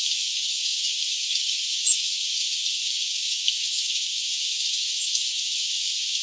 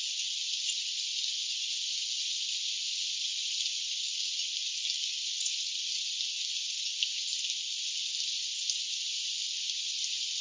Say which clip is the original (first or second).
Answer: second